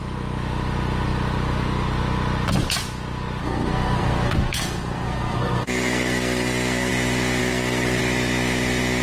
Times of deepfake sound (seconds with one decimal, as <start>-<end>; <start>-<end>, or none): 3.4-6.9; 7.4-8.0